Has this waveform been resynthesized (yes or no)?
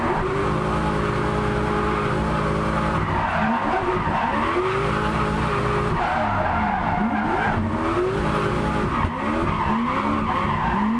no